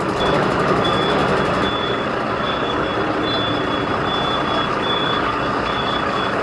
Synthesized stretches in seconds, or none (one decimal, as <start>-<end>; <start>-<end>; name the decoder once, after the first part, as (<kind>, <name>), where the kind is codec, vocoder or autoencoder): 0.0-1.2 (codec, DAC); 1.8-2.9; 4.7-6.4